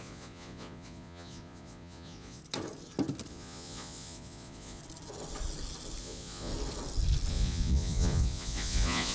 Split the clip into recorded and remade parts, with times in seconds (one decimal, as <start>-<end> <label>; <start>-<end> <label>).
0.0-2.4 remade; 2.4-3.3 recorded; 3.3-4.8 remade; 4.8-6.0 recorded; 6.0-6.5 remade; 6.5-7.3 recorded; 7.3-9.1 remade

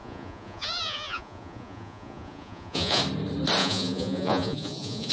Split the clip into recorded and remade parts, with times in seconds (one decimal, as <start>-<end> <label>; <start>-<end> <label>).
0.0-3.0 remade; 3.0-3.6 recorded; 3.6-5.1 remade